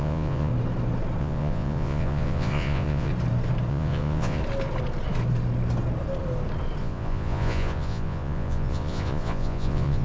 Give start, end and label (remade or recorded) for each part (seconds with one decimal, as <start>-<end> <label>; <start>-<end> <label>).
0.0-0.5 remade; 0.5-1.2 recorded; 1.2-3.1 remade; 3.1-3.7 recorded; 3.7-4.4 remade; 4.4-6.8 recorded; 6.8-10.0 remade